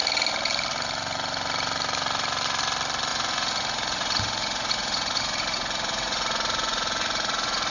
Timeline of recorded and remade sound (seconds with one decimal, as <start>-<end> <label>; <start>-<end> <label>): 0.0-3.1 recorded; 3.1-7.7 remade